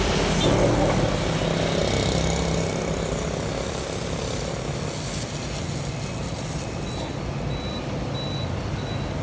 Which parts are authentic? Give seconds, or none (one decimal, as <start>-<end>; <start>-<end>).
0.0-9.2